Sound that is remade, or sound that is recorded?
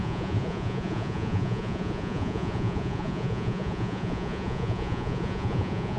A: remade